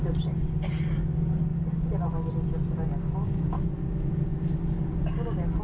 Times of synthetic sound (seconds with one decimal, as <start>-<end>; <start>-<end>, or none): none